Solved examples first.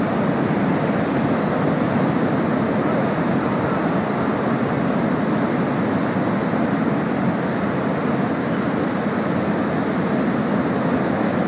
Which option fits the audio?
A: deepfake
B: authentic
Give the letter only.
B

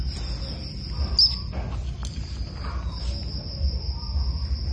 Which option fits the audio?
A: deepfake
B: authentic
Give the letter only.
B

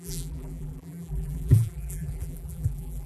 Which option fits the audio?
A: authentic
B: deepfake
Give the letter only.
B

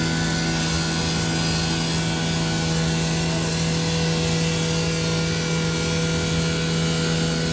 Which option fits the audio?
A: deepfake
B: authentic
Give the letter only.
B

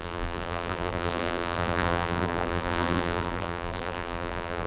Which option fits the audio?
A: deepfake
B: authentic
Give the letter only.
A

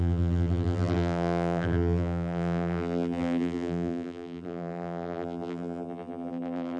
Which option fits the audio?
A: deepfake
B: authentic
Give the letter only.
A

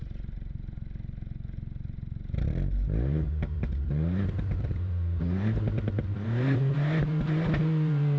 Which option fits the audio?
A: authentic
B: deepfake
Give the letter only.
B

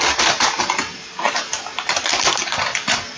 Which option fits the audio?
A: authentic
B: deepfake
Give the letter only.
B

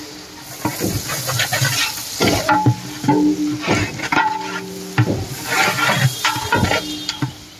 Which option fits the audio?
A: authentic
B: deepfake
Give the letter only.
A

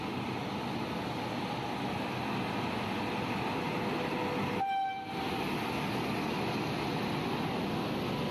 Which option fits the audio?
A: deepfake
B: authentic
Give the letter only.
B